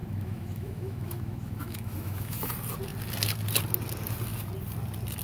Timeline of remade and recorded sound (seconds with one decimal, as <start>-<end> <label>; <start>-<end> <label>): 0.0-2.5 remade; 2.5-5.2 recorded